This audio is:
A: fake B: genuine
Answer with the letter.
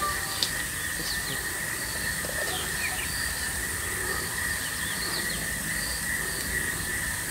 B